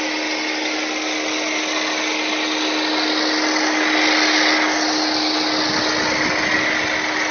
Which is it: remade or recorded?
recorded